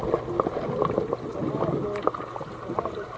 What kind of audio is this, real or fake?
real